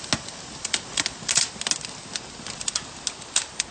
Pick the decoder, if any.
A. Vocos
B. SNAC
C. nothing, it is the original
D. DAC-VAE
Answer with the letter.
C